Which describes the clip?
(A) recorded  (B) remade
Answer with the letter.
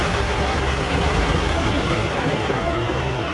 B